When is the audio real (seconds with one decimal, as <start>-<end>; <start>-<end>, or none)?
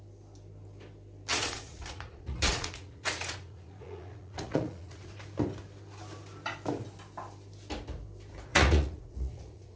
0.0-1.3; 5.1-8.5